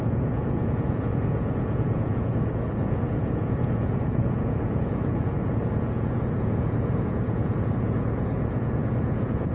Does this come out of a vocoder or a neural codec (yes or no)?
yes